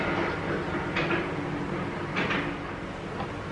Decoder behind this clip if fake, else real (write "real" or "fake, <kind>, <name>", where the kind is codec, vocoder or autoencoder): real